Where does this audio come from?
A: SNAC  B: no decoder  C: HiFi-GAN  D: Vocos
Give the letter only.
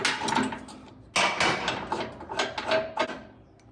B